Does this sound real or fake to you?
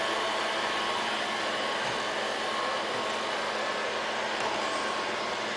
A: real